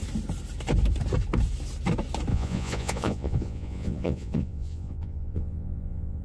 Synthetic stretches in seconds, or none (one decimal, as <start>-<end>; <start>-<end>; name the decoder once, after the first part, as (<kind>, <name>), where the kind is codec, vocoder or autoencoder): 2.3-6.2 (vocoder, Vocos)